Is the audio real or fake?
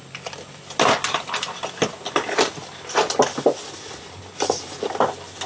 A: real